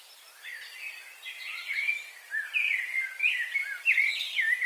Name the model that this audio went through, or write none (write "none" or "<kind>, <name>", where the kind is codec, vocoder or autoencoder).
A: vocoder, BigVGAN v2